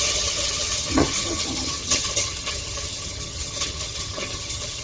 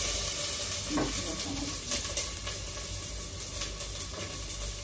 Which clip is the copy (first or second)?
first